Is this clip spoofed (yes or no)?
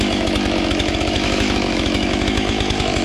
yes